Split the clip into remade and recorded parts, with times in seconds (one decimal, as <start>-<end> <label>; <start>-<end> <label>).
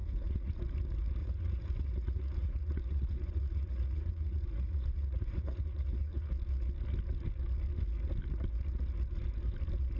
0.0-0.6 remade; 0.6-1.2 recorded; 1.2-6.3 remade; 6.3-10.0 recorded